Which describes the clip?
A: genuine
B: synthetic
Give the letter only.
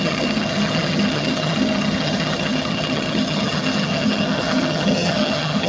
B